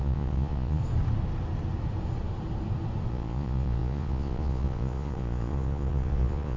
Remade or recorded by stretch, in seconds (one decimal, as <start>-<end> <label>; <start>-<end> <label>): 0.0-0.8 remade; 0.8-3.1 recorded; 3.1-6.6 remade